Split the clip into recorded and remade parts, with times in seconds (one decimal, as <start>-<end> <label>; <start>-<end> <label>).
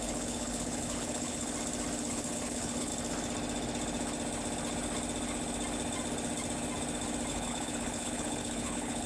0.0-1.5 remade; 1.5-2.0 recorded; 2.0-2.9 remade; 2.9-7.3 recorded; 7.3-9.1 remade